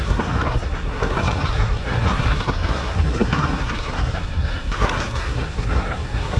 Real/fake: fake